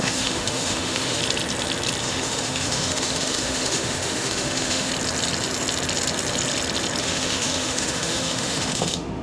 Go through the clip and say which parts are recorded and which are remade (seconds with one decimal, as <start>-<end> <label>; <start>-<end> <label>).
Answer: 0.0-1.2 remade; 1.2-2.0 recorded; 2.0-4.9 remade; 4.9-7.0 recorded; 7.0-9.2 remade